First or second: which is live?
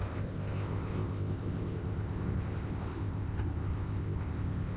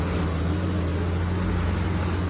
second